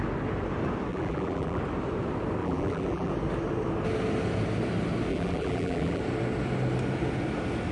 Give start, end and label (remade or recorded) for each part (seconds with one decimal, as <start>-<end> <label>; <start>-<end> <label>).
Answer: 0.0-0.9 recorded; 0.9-1.6 remade; 1.6-2.4 recorded; 2.4-3.1 remade; 3.1-5.1 recorded; 5.1-6.0 remade; 6.0-7.7 recorded